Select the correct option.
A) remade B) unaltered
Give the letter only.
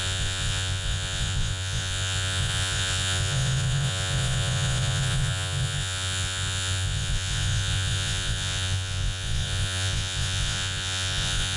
A